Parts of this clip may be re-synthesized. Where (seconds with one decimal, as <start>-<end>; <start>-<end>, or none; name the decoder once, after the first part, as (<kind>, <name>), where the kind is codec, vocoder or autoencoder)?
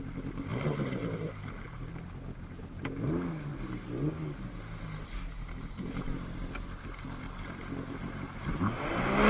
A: none